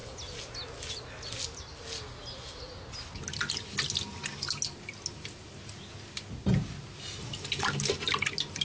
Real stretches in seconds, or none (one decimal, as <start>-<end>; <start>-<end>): 0.0-8.6